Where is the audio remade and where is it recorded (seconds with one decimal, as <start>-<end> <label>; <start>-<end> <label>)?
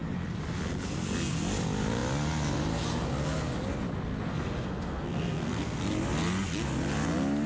0.0-4.3 recorded; 4.3-5.8 remade; 5.8-7.5 recorded